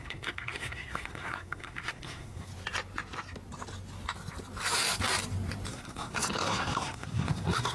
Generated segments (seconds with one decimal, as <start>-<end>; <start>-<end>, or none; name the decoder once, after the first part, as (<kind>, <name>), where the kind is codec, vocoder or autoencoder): 0.0-2.5 (codec, SNAC); 5.7-7.7